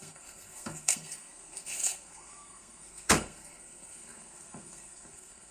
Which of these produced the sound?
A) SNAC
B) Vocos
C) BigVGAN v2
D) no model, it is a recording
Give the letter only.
A